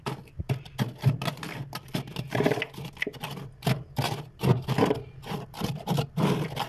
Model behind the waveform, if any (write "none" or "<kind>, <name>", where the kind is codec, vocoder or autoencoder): none